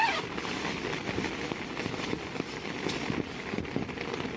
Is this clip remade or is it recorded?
recorded